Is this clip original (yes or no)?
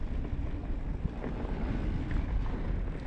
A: yes